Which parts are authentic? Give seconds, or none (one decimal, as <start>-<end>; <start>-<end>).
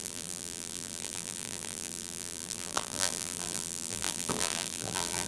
none